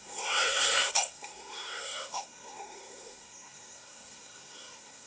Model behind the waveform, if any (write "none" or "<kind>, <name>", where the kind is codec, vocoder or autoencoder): codec, SNAC